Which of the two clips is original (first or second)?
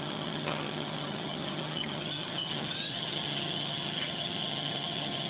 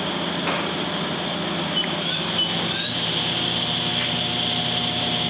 second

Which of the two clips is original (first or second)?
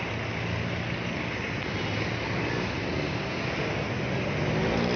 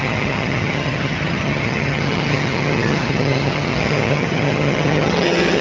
first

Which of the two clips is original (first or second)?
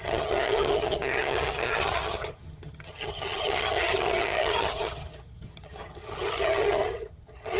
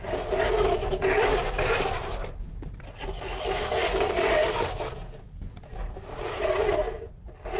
second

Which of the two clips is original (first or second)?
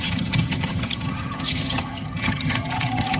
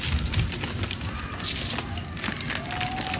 second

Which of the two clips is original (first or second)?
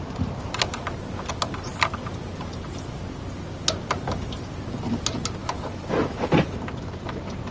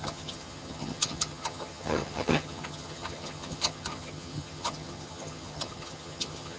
first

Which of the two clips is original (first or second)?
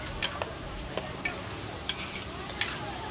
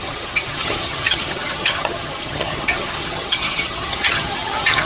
first